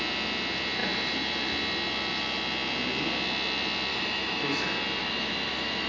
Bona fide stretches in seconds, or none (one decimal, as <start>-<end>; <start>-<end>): 0.0-3.9; 4.6-5.0